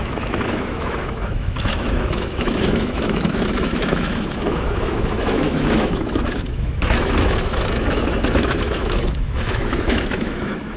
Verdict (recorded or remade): remade